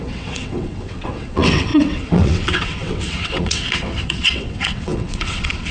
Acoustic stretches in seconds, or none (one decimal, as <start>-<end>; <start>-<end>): none